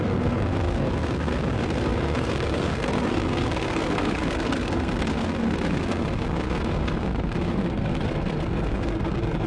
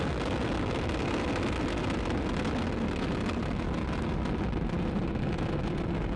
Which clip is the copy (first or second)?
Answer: first